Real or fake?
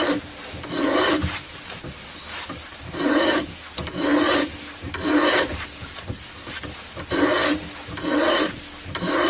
real